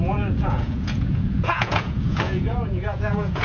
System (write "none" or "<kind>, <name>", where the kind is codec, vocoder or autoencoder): vocoder, Vocos